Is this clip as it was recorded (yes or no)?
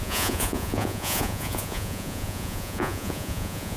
no